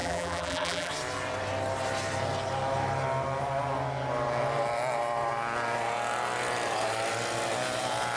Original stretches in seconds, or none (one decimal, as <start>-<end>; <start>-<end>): 0.9-8.2